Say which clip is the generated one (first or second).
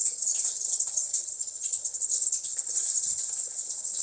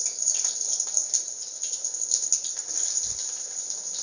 first